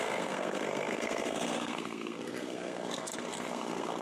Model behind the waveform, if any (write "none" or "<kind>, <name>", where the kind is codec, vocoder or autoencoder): codec, SNAC